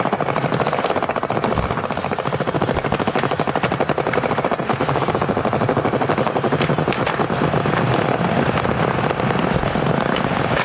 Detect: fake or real real